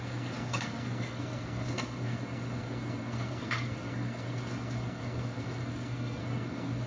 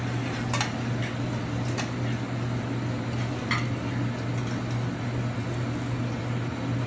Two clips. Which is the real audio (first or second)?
second